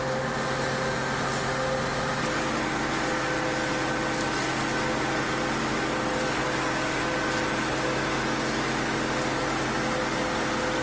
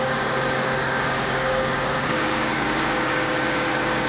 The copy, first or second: second